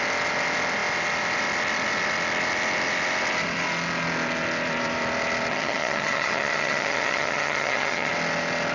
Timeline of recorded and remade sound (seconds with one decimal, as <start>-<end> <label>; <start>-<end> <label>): 0.0-5.5 recorded; 5.5-8.1 remade; 8.1-8.7 recorded